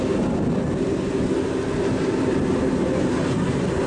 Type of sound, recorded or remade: recorded